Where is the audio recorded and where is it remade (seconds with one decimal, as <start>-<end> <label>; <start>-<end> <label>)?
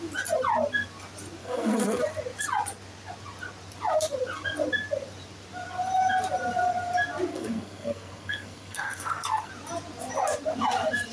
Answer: 0.0-1.4 recorded; 1.4-2.0 remade; 2.0-7.3 recorded; 7.3-9.5 remade; 9.5-11.1 recorded